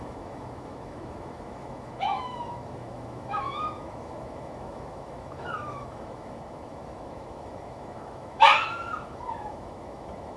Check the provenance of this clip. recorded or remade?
remade